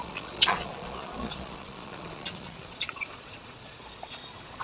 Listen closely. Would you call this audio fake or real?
fake